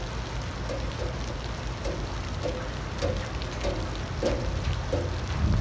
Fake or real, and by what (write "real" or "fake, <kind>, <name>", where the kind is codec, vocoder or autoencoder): real